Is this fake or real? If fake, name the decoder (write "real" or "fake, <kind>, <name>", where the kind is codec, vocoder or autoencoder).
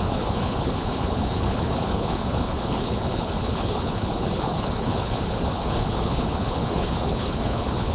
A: fake, codec, HILCodec